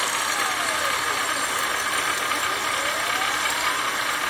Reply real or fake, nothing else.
real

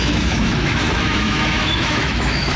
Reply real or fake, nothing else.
fake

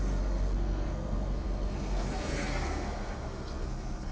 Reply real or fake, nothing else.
fake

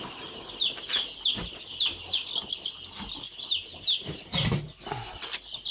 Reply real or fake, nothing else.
real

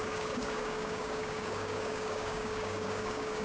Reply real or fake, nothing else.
fake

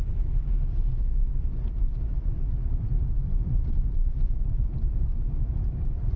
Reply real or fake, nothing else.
fake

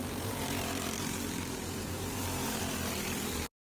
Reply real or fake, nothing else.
fake